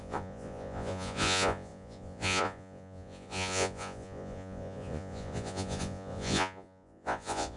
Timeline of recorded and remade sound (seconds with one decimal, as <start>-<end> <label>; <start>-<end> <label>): 0.0-7.6 remade